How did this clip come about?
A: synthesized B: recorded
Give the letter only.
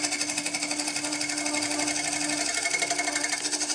B